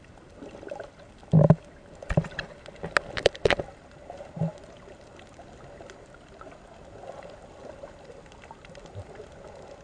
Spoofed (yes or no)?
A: no